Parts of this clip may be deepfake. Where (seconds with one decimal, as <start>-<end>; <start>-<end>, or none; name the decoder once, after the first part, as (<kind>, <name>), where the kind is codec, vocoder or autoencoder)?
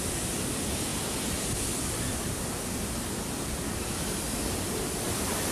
none